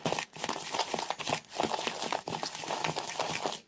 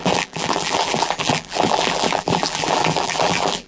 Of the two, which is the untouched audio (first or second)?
first